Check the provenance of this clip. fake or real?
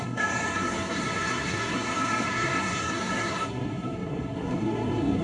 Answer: fake